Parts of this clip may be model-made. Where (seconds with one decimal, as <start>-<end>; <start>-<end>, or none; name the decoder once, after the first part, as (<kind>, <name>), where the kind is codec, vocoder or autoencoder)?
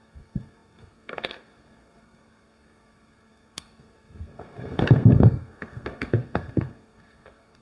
0.0-7.6 (codec, SNAC)